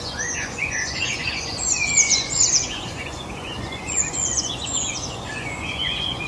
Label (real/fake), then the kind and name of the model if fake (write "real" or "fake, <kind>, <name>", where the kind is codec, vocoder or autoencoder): fake, vocoder, Vocos